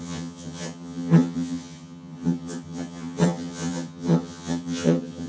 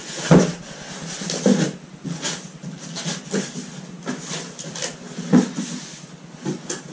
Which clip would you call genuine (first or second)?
second